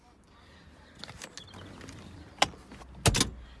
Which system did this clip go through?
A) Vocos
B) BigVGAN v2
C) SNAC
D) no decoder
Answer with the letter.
D